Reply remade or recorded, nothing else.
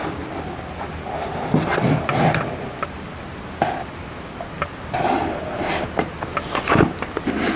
recorded